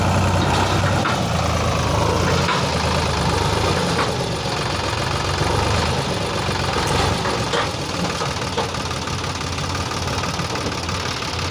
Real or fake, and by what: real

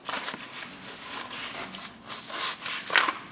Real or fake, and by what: real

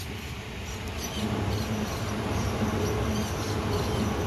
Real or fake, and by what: real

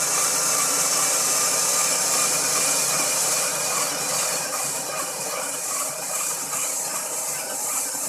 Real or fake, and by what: fake, vocoder, BigVGAN v2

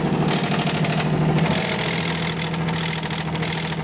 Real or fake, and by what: real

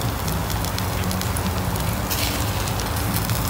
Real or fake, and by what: real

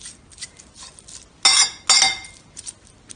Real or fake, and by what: real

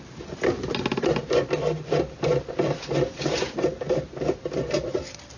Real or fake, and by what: real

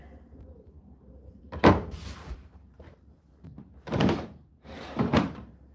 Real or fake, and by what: fake, vocoder, BigVGAN v2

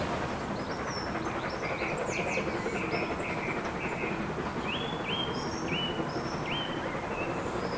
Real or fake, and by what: real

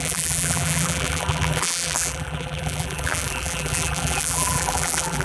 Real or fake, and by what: fake, vocoder, BigVGAN v2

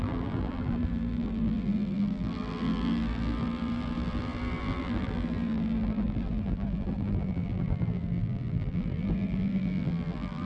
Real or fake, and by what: fake, vocoder, BigVGAN v2